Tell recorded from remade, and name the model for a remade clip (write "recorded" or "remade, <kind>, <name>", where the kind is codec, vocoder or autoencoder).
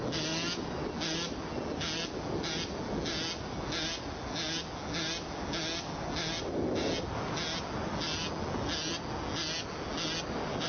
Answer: recorded